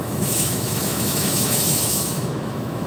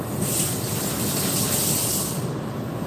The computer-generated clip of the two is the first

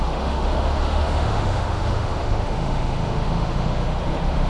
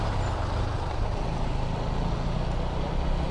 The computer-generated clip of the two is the first